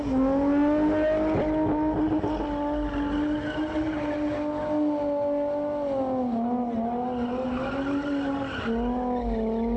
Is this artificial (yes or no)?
no